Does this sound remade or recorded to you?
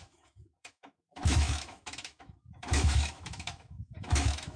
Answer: remade